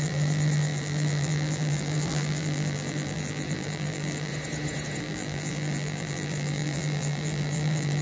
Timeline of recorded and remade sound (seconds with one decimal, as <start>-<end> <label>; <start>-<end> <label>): 0.0-4.3 remade; 4.3-5.0 recorded; 5.0-8.0 remade